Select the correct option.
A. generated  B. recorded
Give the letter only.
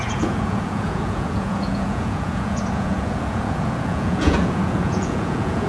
A